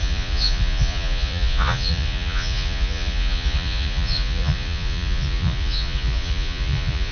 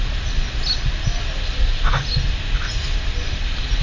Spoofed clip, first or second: first